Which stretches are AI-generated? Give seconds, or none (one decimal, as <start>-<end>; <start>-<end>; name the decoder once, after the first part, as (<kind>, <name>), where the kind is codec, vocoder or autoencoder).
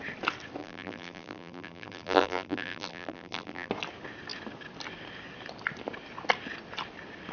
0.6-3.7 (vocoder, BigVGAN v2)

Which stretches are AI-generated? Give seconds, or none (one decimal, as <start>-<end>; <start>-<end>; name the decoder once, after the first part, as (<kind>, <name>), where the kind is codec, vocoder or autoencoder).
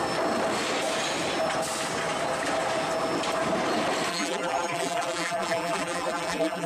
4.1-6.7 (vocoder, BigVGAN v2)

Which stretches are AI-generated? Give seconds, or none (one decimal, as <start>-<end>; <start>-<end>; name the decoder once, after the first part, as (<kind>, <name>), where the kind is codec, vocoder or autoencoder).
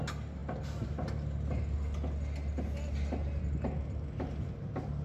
none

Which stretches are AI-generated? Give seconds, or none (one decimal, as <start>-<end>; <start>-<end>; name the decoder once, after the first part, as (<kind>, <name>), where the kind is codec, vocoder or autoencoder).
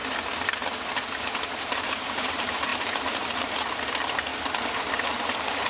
1.8-4.3 (vocoder, BigVGAN v2); 4.9-5.7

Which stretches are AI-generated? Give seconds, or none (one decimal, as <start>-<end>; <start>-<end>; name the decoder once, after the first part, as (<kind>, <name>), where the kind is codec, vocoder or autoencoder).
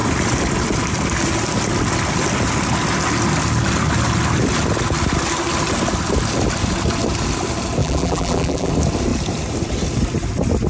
7.8-8.7 (vocoder, BigVGAN v2)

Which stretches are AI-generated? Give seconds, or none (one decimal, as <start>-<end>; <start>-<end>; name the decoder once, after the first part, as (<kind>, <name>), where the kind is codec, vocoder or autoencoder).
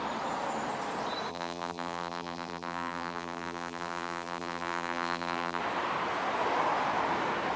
1.3-5.6 (vocoder, BigVGAN v2)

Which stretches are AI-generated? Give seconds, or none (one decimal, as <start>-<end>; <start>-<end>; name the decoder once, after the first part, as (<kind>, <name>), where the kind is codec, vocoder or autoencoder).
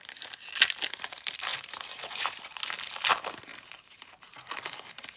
1.5-2.6 (vocoder, BigVGAN v2); 3.5-4.1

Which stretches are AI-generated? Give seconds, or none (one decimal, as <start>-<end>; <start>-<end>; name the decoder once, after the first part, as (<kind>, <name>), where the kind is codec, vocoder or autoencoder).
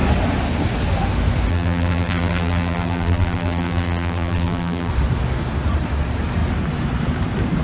1.5-4.9 (vocoder, BigVGAN v2)